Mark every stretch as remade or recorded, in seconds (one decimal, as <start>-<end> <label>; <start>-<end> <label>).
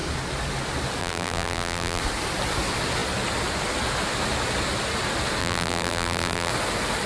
0.0-1.0 recorded; 1.0-2.0 remade; 2.0-5.4 recorded; 5.4-6.5 remade; 6.5-7.1 recorded